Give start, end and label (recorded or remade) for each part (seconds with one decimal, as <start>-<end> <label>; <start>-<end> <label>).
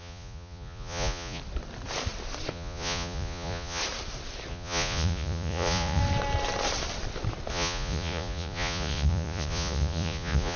0.0-1.4 remade; 1.4-2.5 recorded; 2.5-3.8 remade; 3.8-4.5 recorded; 4.5-6.0 remade; 6.0-7.5 recorded; 7.5-10.6 remade